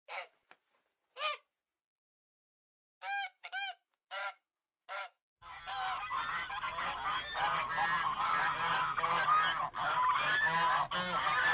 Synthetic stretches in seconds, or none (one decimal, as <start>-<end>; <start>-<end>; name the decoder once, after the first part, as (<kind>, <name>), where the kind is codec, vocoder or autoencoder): 0.0-0.5 (autoencoder, DAC-VAE); 2.9-5.6